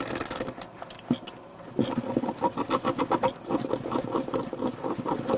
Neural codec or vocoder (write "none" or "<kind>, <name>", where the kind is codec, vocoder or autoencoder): none